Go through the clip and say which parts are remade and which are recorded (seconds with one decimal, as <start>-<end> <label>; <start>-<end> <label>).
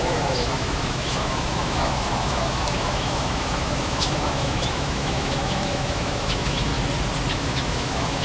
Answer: 0.0-6.7 remade; 6.7-7.3 recorded; 7.3-8.2 remade